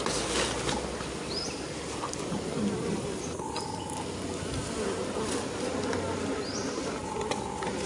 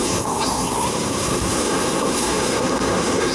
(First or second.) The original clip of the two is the first